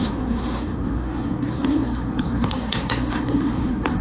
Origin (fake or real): fake